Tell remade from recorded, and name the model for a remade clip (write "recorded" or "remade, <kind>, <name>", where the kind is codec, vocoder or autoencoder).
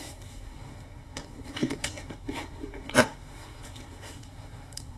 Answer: remade, codec, SNAC